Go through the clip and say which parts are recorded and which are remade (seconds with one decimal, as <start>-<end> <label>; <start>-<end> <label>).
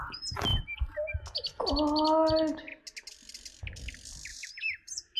0.0-0.5 recorded; 0.5-1.1 remade; 1.1-4.3 recorded; 4.3-5.2 remade